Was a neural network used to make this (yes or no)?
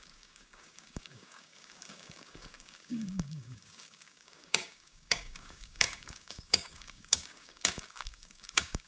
yes